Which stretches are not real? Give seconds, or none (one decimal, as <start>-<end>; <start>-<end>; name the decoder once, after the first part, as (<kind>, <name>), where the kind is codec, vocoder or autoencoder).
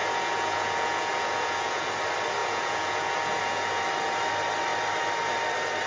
0.0-1.9 (vocoder, Vocos); 2.4-3.8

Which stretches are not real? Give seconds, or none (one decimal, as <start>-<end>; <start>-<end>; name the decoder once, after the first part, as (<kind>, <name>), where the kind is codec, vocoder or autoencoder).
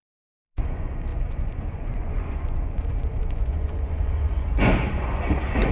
0.0-5.7 (vocoder, Vocos)